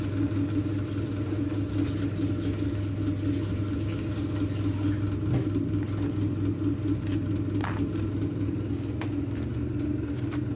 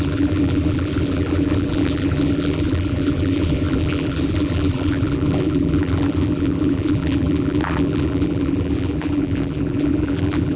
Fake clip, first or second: second